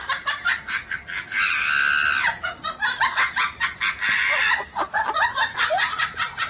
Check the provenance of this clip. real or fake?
real